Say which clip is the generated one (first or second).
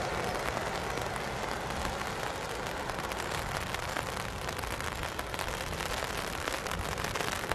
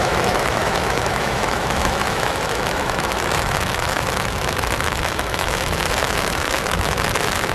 second